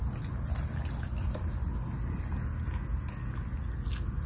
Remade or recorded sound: recorded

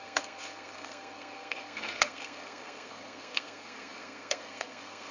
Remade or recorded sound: remade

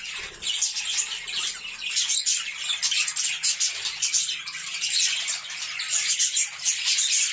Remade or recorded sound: recorded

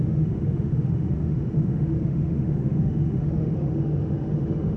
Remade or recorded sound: remade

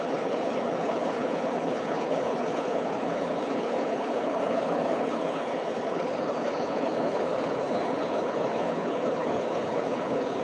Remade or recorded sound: remade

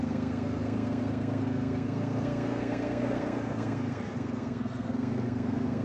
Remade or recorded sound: remade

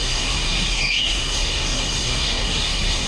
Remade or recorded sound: remade